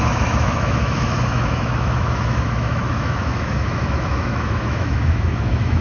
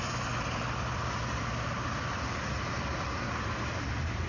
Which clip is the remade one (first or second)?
first